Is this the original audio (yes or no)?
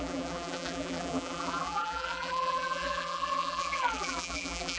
no